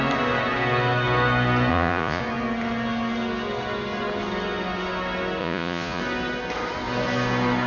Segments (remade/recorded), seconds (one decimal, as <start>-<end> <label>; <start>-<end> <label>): 0.0-1.7 recorded; 1.7-2.2 remade; 2.2-5.4 recorded; 5.4-6.0 remade; 6.0-7.7 recorded